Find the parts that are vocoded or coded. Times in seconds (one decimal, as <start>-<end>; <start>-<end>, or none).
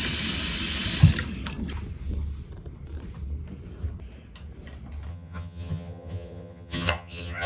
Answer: 5.1-7.5